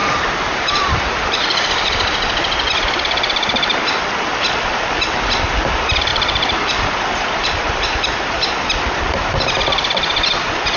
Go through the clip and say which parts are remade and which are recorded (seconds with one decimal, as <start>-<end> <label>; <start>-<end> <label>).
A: 0.0-1.4 remade; 1.4-6.1 recorded; 6.1-8.4 remade; 8.4-10.8 recorded